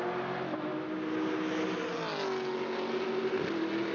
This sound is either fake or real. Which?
real